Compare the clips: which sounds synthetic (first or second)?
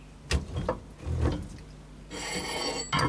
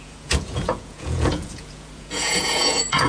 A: second